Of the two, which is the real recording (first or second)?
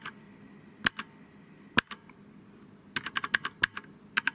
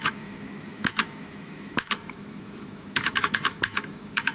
first